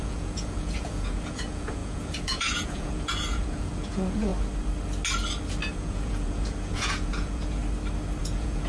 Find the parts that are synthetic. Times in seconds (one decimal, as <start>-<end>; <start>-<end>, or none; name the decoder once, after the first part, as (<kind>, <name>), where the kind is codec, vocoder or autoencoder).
0.0-4.3 (vocoder, Vocos); 5.7-7.6; 8.2-8.7